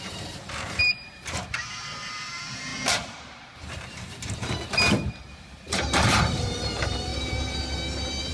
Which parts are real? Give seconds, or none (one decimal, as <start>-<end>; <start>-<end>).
7.1-8.3

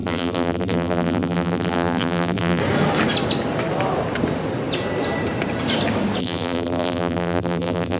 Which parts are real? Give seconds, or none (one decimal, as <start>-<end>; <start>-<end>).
2.6-6.2

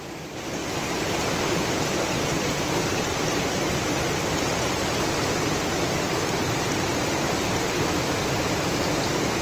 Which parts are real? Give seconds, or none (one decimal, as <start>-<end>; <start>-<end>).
0.6-1.7; 3.2-8.4